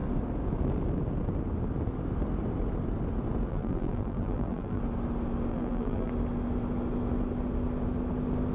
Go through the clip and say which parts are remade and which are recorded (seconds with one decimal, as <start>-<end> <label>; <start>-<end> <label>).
0.0-3.5 recorded; 3.5-4.8 remade; 4.8-5.5 recorded; 5.5-6.1 remade; 6.1-8.5 recorded